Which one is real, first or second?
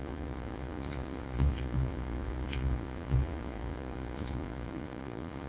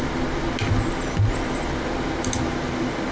second